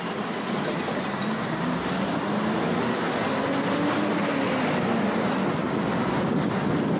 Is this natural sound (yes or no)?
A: yes